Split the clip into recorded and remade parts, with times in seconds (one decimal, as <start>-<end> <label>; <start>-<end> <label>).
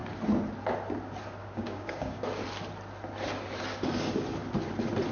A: 0.0-1.4 recorded; 1.4-2.2 remade; 2.2-5.1 recorded